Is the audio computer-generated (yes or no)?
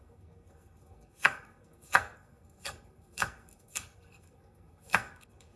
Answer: yes